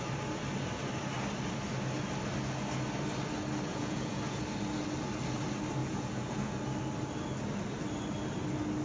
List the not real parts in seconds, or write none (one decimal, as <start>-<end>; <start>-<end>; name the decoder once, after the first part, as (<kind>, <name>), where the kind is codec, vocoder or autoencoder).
3.7-4.4 (vocoder, Vocos); 5.8-6.6